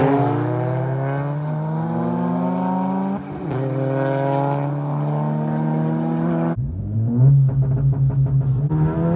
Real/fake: real